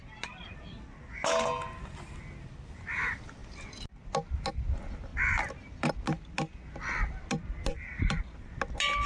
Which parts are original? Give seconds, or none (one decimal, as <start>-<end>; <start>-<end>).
0.0-5.1; 5.9-7.7; 8.6-9.1